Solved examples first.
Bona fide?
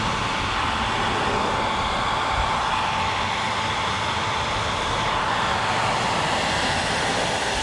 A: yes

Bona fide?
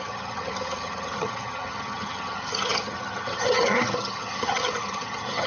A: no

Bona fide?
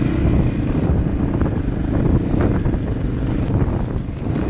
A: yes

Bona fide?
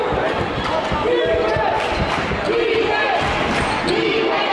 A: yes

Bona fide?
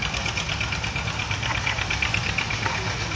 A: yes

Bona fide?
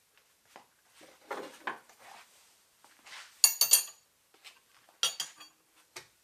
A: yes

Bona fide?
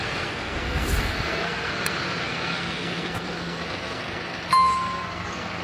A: no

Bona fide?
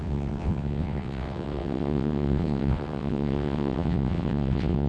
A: no